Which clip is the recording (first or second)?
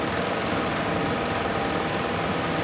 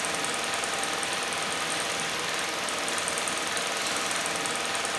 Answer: second